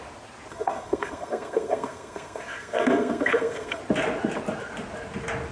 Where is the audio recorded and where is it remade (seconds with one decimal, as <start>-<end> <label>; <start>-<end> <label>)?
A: 0.0-0.5 recorded; 0.5-3.8 remade; 3.8-5.5 recorded